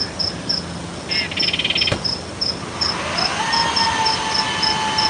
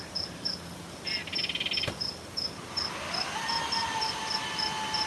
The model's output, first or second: second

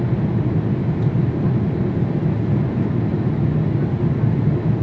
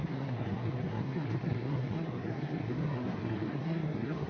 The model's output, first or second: second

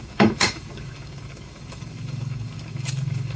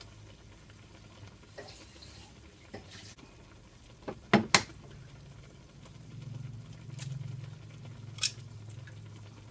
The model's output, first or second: first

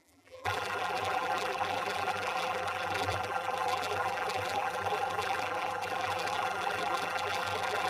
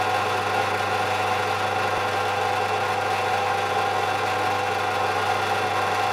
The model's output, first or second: first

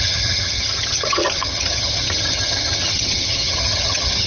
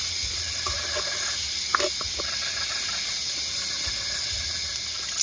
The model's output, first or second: first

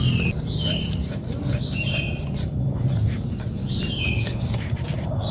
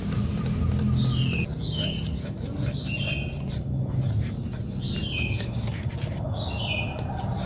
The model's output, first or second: first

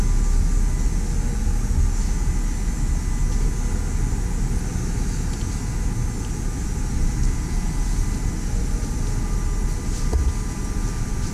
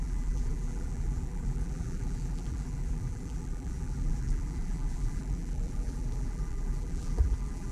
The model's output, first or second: second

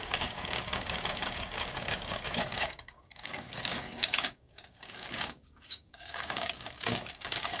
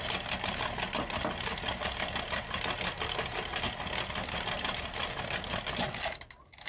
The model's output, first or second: first